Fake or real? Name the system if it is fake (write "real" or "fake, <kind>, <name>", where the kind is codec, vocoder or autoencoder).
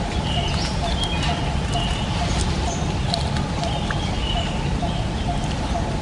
real